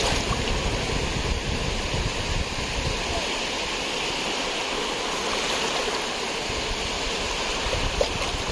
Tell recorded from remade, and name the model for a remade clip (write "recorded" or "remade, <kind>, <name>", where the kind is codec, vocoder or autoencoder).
recorded